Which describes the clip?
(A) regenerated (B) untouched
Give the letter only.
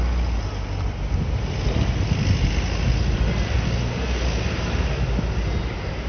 B